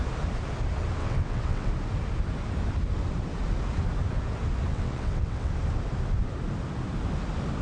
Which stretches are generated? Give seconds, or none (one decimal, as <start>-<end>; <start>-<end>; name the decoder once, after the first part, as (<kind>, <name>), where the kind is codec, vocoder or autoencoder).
1.0-1.7 (vocoder, WaveNeXt); 4.7-5.5